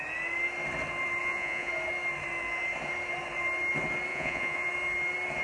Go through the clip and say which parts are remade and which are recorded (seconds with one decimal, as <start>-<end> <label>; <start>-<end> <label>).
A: 0.0-1.2 recorded; 1.2-1.7 remade; 1.7-4.1 recorded; 4.1-4.7 remade; 4.7-5.4 recorded